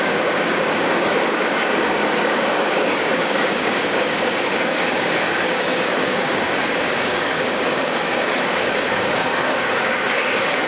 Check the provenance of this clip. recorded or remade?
remade